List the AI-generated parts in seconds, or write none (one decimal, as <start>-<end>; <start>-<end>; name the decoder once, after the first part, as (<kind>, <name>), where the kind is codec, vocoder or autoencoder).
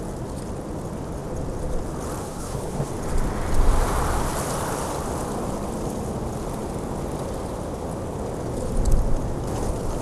2.2-2.9 (codec, SNAC)